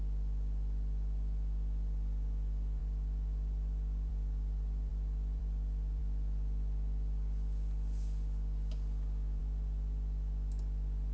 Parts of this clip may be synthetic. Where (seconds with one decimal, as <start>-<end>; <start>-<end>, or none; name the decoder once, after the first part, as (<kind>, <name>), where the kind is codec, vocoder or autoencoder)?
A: none

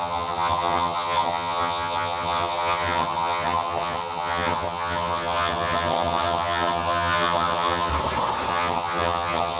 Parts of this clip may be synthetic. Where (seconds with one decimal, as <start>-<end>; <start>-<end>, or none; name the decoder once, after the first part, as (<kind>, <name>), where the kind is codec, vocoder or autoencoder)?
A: 0.0-7.9 (vocoder, HiFi-GAN); 8.5-9.6

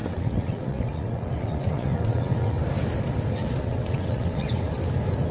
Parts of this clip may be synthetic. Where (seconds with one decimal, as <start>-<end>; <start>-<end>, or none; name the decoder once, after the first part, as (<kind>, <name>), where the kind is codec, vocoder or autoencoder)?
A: 0.0-2.6 (vocoder, WaveNeXt); 3.4-4.7

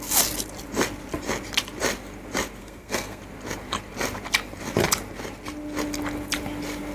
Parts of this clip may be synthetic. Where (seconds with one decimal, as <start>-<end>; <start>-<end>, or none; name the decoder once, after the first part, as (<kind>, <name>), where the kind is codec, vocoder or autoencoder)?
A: 2.6-3.2 (codec, SNAC)

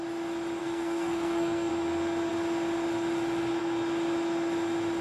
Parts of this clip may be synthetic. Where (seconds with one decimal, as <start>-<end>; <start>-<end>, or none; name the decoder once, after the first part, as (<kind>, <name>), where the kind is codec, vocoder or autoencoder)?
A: 0.6-1.7 (codec, SNAC)

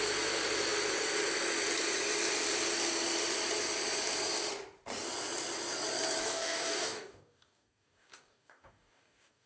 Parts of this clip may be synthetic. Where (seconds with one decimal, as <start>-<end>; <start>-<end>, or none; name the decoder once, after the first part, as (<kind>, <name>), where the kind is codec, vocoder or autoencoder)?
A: 6.2-9.5 (codec, DAC)

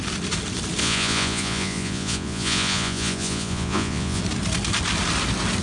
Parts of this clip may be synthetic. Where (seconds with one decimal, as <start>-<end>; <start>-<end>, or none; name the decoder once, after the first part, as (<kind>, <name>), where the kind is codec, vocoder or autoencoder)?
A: 0.8-4.2 (vocoder, Vocos)